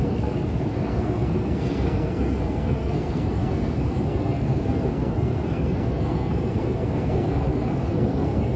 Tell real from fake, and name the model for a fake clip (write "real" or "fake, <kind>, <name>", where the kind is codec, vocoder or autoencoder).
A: fake, codec, SNAC